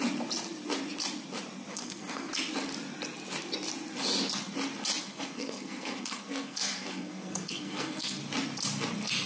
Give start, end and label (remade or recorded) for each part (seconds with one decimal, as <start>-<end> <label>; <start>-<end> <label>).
0.0-1.7 recorded; 1.7-2.3 remade; 2.3-5.0 recorded; 5.0-8.2 remade; 8.2-9.3 recorded